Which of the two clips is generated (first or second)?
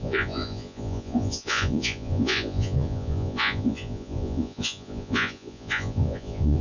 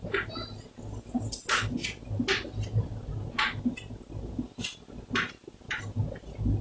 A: first